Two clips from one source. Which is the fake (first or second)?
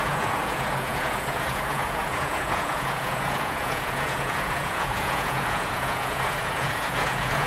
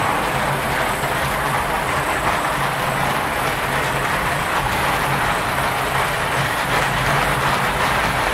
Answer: first